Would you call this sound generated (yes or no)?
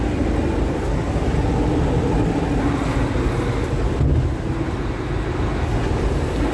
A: no